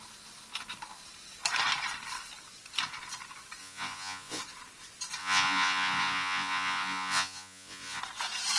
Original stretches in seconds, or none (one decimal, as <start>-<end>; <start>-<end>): 0.0-3.6; 4.4-5.2; 8.0-8.6